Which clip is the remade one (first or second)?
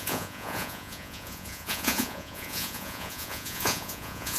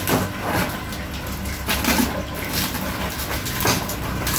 first